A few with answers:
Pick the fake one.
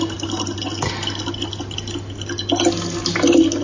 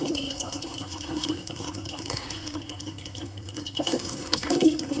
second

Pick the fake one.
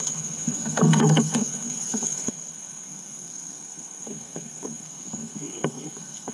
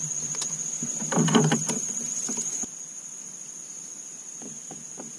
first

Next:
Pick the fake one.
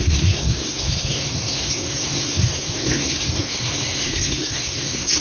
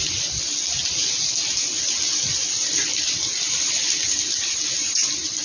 first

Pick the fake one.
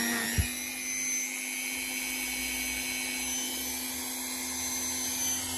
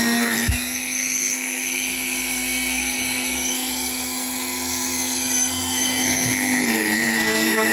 second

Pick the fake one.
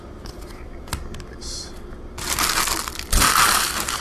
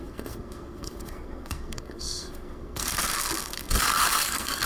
second